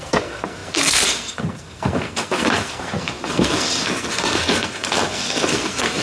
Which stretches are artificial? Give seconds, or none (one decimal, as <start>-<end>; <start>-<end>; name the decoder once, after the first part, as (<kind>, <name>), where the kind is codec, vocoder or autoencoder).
0.0-6.0 (codec, SNAC)